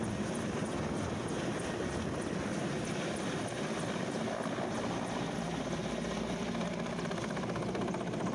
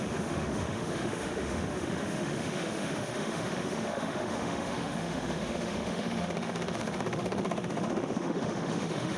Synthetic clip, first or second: second